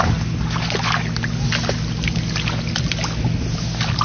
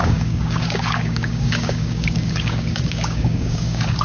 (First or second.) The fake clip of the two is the second